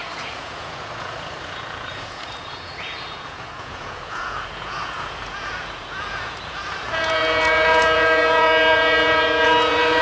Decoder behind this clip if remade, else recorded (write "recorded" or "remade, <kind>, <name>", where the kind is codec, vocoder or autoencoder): remade, vocoder, Vocos